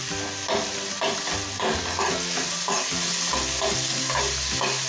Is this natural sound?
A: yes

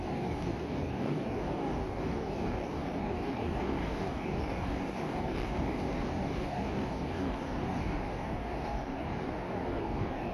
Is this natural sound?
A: no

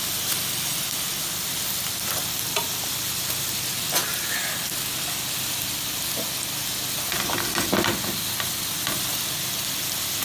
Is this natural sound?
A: yes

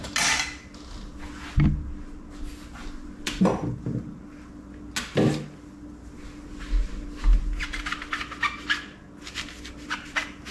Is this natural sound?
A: yes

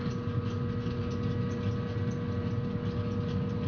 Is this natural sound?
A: yes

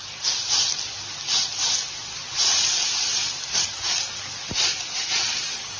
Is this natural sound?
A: yes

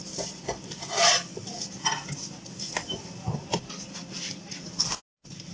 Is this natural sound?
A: yes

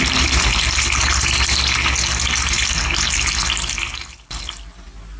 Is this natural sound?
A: yes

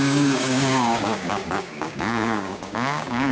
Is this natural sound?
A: no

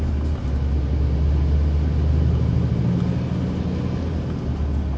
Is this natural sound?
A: yes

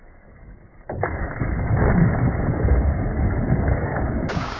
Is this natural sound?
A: no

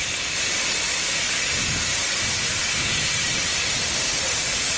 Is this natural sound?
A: yes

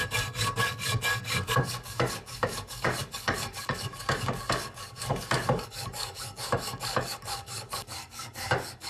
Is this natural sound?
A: no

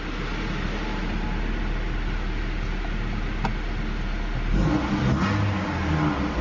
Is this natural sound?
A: yes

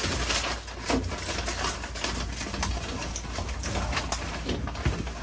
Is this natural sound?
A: yes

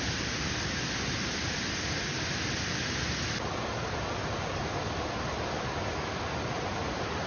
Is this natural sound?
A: yes